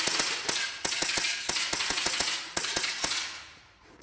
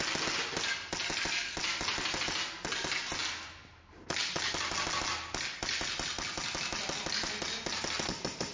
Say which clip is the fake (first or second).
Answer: first